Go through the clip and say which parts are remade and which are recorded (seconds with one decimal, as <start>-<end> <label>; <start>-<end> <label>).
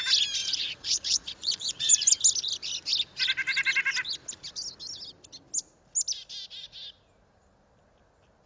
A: 0.0-0.4 recorded; 0.4-1.9 remade; 1.9-8.5 recorded